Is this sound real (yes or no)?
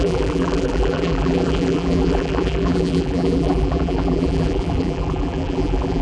no